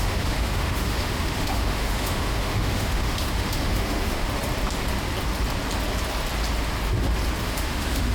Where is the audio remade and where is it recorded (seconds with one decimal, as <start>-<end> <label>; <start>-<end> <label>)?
0.0-4.2 remade; 4.2-7.4 recorded; 7.4-8.1 remade